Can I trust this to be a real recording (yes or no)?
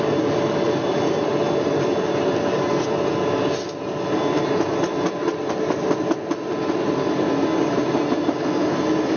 yes